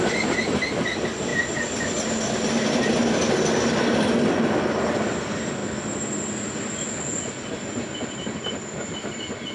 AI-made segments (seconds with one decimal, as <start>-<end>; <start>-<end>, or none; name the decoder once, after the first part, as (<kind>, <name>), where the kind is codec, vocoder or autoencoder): none